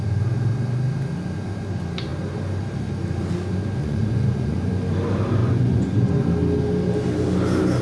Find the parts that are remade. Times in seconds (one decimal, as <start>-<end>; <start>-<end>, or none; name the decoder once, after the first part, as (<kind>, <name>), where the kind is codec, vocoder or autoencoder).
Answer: 3.8-4.7 (vocoder, Vocos); 5.4-6.1